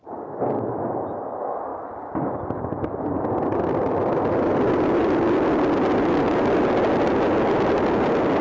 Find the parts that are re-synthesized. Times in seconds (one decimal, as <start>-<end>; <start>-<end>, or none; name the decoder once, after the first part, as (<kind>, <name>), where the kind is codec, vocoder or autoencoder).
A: none